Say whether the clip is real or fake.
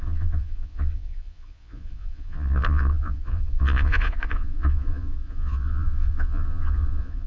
fake